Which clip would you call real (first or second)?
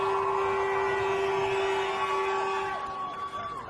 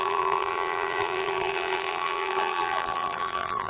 first